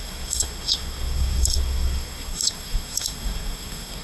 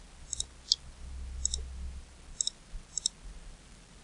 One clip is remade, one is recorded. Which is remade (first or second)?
first